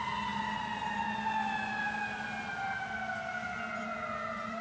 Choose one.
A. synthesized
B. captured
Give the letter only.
B